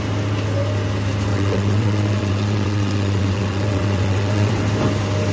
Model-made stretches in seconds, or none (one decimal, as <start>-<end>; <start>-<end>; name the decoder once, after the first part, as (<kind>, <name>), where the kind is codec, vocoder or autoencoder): 1.3-4.5 (vocoder, WaveNeXt)